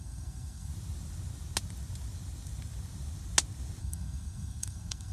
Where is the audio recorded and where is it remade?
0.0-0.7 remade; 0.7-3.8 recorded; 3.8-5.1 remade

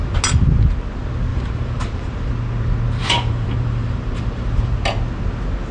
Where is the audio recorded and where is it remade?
0.0-1.3 recorded; 1.3-2.3 remade; 2.3-3.0 recorded; 3.0-4.7 remade; 4.7-5.7 recorded

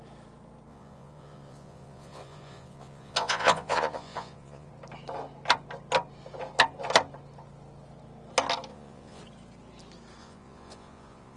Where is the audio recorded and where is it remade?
0.0-0.7 recorded; 0.7-4.7 remade; 4.7-8.7 recorded; 8.7-9.2 remade; 9.2-10.2 recorded; 10.2-11.4 remade

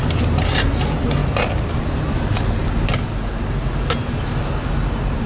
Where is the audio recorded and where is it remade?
0.0-5.3 recorded

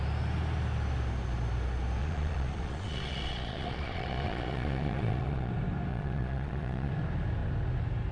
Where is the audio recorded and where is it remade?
0.0-2.0 recorded; 2.0-5.5 remade; 5.5-5.9 recorded; 5.9-6.9 remade; 6.9-8.1 recorded

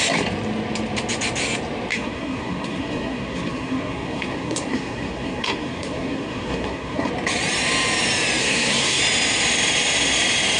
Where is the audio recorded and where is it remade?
0.0-1.9 recorded; 1.9-7.1 remade; 7.1-8.4 recorded; 8.4-9.0 remade; 9.0-10.6 recorded

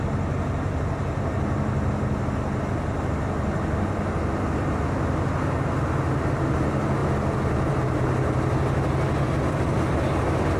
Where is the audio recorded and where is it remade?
0.0-7.0 recorded; 7.0-7.8 remade; 7.8-10.6 recorded

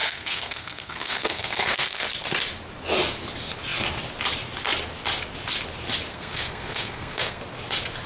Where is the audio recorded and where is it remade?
0.0-2.1 remade; 2.1-6.1 recorded; 6.1-7.4 remade; 7.4-8.1 recorded